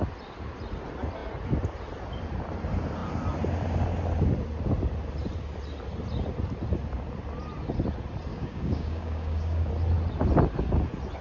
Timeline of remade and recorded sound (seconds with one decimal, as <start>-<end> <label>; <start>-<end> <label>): 0.0-8.3 recorded; 8.3-9.7 remade; 9.7-11.2 recorded